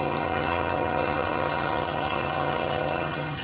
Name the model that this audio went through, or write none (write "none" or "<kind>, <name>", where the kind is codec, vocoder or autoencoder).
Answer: vocoder, HiFi-GAN